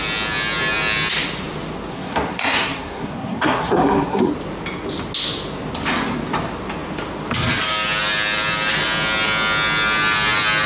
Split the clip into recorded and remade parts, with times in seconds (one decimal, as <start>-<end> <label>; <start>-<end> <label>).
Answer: 0.0-1.9 recorded; 1.9-4.3 remade; 4.3-10.7 recorded